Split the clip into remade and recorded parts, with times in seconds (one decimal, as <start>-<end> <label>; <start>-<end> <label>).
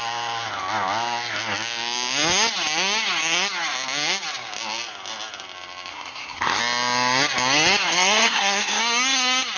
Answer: 0.0-5.9 recorded; 5.9-6.6 remade; 6.6-7.9 recorded; 7.9-8.8 remade; 8.8-9.6 recorded